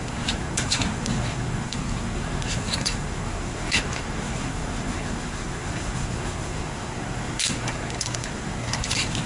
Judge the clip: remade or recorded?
remade